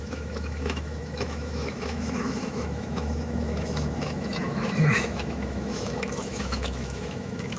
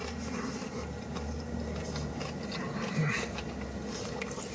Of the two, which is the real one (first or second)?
second